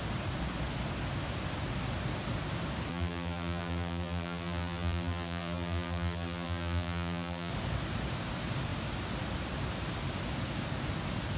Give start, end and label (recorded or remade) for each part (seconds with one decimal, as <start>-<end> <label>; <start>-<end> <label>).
0.0-2.9 recorded; 2.9-7.5 remade; 7.5-11.4 recorded